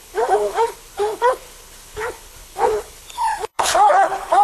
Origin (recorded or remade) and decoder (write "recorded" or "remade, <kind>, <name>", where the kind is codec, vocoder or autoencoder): remade, codec, HILCodec